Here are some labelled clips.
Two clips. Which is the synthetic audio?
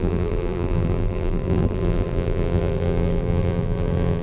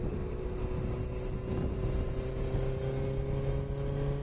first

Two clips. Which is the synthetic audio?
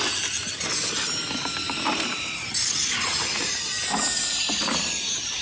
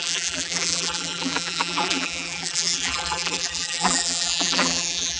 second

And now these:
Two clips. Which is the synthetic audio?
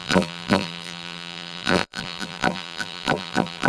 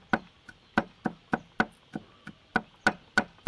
first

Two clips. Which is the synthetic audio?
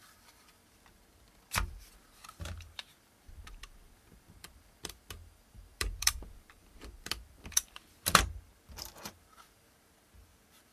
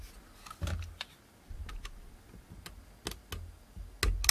first